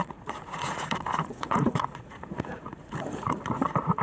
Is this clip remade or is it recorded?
remade